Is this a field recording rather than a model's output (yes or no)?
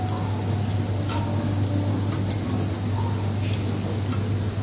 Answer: yes